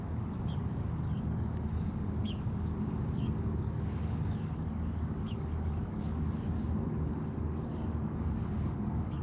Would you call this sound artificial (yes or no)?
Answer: yes